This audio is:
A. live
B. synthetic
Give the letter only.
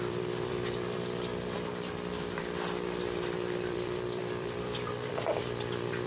B